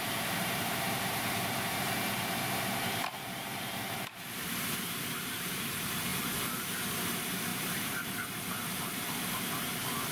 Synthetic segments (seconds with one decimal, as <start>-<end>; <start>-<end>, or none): 0.0-6.1; 6.9-10.1